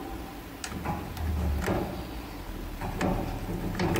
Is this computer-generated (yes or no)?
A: no